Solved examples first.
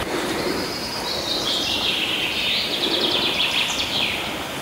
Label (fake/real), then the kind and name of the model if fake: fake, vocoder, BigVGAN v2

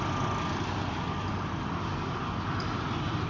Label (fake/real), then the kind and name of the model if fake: real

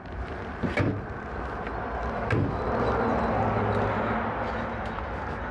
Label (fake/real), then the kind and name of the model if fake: real